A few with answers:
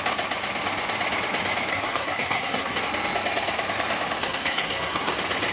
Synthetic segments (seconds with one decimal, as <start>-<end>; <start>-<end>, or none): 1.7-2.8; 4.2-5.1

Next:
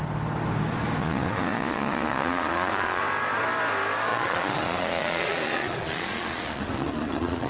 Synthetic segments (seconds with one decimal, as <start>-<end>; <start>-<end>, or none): 1.0-3.0; 4.1-7.5

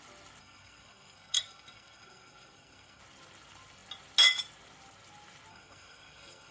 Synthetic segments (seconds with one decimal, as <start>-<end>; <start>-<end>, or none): 0.4-3.0; 5.5-6.5